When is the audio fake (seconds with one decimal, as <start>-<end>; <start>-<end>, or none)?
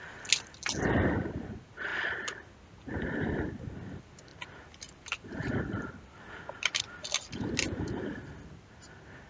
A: none